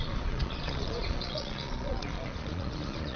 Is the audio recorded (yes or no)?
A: no